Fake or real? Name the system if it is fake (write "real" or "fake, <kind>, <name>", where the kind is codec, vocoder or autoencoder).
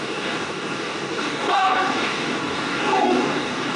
fake, codec, DAC